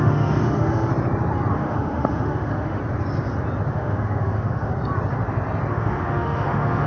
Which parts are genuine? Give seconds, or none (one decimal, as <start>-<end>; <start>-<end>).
0.9-1.5; 2.8-3.7; 4.7-5.7